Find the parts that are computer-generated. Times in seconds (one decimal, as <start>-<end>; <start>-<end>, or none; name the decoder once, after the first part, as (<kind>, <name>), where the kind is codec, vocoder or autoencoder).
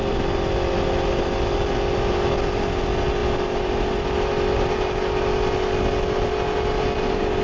none